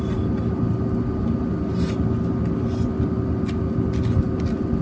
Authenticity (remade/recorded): recorded